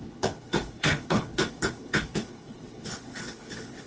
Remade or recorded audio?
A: remade